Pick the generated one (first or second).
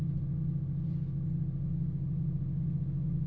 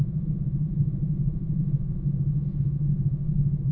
second